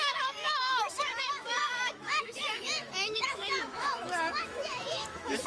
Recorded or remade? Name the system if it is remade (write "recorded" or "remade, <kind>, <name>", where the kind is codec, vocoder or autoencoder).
remade, autoencoder, DAC-VAE